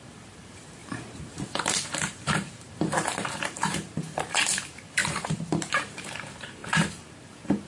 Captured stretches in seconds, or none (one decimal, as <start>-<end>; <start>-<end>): 5.0-5.7